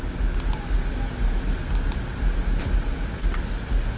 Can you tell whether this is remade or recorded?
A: recorded